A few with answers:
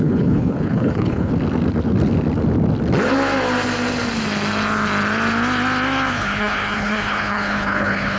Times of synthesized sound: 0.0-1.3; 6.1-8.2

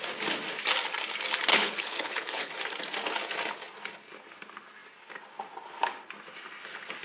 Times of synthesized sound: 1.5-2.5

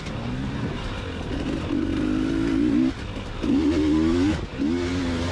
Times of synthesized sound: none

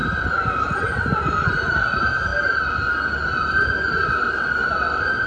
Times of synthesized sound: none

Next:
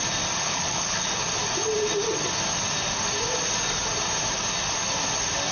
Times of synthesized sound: 0.4-1.1

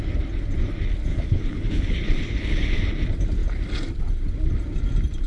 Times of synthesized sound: 1.1-2.8